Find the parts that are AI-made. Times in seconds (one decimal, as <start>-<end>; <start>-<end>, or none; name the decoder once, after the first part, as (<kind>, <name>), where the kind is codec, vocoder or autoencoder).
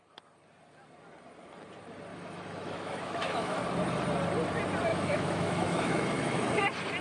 2.1-3.6 (autoencoder, DAC-VAE); 4.9-6.5